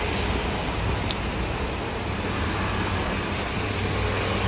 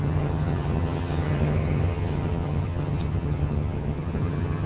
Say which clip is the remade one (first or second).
second